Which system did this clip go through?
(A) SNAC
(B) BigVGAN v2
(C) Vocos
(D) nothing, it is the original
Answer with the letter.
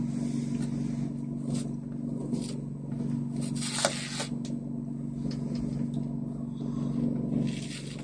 D